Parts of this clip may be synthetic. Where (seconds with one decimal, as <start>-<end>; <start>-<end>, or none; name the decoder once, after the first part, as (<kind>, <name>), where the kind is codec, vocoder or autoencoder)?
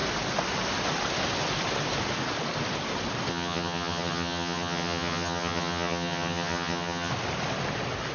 3.3-7.1 (vocoder, HiFi-GAN)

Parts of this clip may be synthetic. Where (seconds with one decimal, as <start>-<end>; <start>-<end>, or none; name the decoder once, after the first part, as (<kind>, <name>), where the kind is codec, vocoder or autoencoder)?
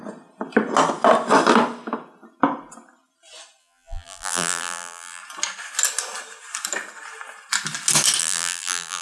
3.6-5.2 (vocoder, BigVGAN v2); 8.2-9.0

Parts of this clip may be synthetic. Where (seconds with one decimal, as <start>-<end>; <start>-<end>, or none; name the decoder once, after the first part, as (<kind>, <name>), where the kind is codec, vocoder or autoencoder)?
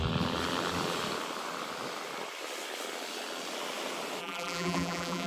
4.2-5.3 (vocoder, BigVGAN v2)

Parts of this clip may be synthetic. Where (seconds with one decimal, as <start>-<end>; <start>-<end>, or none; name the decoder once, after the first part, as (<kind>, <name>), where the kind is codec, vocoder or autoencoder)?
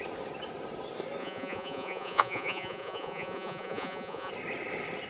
1.2-4.3 (vocoder, Vocos)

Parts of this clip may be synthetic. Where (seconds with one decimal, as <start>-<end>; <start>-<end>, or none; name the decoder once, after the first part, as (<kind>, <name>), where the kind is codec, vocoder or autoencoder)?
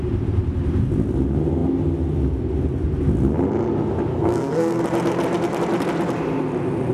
4.1-4.8 (codec, SNAC)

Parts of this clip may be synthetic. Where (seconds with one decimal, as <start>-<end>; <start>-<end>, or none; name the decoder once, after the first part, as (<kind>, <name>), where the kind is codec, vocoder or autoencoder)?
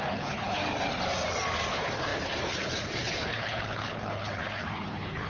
0.0-0.6 (codec, HILCodec); 1.7-5.3